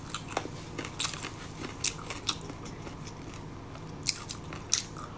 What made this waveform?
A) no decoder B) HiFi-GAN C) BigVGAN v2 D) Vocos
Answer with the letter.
A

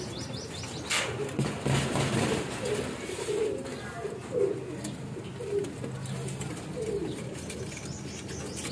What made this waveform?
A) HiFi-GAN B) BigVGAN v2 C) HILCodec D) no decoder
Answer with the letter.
D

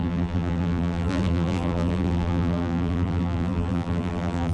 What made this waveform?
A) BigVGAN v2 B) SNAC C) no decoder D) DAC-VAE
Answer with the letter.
A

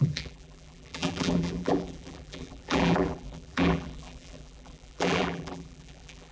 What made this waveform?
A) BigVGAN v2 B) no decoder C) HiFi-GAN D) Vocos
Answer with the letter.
A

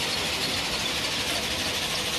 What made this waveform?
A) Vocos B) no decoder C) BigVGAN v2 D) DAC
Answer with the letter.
C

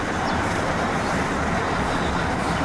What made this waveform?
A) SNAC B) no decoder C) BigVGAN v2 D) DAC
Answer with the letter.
C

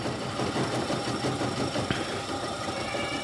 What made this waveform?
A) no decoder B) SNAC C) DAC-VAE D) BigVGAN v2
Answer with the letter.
D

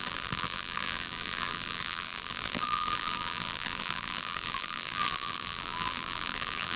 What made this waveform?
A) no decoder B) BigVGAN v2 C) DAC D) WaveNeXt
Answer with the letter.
B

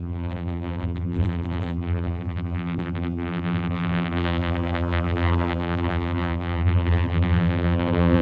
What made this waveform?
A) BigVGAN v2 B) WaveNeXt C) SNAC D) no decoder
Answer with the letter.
A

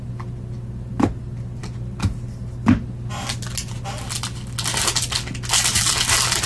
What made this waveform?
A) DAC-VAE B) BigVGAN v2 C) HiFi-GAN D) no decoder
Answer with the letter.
D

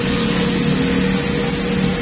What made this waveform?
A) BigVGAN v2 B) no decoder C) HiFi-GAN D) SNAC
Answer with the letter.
B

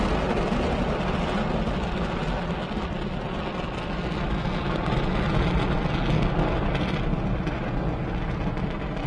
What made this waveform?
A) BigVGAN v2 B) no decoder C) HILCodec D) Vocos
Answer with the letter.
B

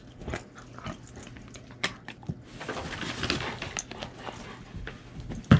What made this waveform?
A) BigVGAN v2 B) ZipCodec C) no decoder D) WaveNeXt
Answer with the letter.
C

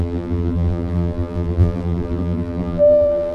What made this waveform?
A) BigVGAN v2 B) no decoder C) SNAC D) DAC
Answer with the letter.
A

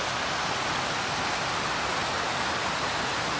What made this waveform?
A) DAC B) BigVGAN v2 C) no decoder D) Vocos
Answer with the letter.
C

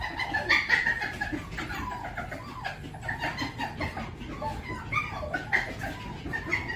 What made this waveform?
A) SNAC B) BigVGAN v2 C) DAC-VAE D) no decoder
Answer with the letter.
D